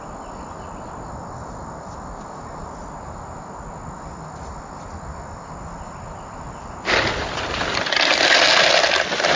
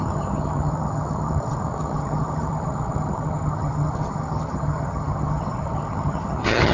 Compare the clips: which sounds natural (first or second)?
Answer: first